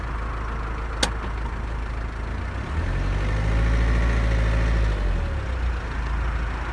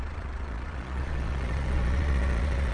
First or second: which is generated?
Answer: second